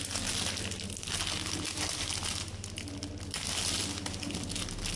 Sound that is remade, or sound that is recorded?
recorded